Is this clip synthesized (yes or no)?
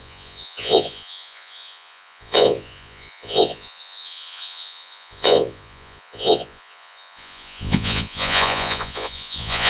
yes